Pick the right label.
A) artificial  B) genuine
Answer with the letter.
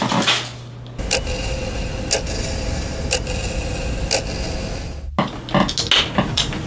B